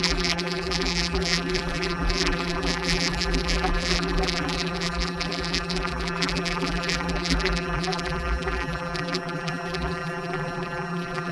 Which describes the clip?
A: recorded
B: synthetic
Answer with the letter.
B